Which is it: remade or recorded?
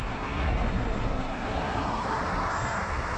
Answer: remade